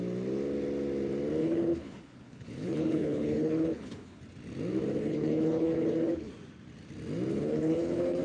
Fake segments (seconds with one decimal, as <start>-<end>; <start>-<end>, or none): 1.4-4.2; 5.0-6.3; 7.3-8.2